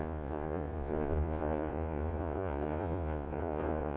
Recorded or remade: remade